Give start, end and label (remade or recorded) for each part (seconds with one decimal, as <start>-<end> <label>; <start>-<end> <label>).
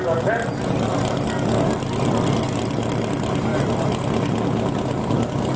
0.0-5.6 recorded